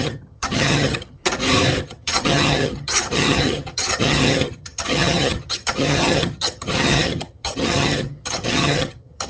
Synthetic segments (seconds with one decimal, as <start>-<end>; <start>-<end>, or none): 0.0-1.2; 1.8-9.3